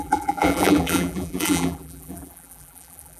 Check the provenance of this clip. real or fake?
fake